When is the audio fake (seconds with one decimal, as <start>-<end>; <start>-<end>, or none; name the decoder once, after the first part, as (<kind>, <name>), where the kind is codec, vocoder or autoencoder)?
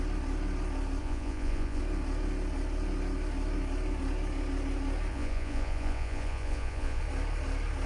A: 1.0-1.8 (vocoder, Vocos); 5.1-7.0